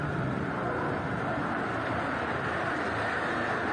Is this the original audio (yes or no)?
yes